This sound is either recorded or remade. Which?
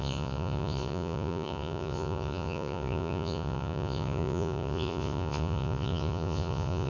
remade